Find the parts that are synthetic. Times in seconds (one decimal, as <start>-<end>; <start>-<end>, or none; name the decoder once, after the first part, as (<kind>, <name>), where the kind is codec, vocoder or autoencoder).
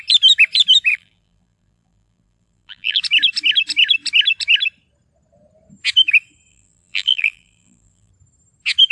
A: 0.9-3.0 (vocoder, BigVGAN v2); 6.5-8.1